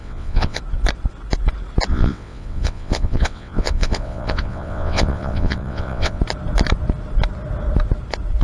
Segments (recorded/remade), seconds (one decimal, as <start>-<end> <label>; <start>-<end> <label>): 0.0-0.6 remade; 0.6-1.9 recorded; 1.9-6.2 remade; 6.2-8.4 recorded